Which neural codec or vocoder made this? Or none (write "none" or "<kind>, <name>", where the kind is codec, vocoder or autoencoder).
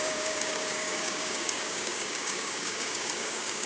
codec, DAC